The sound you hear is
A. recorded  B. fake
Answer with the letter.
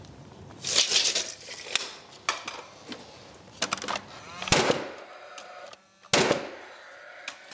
A